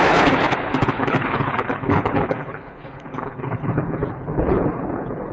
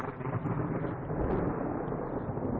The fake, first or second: first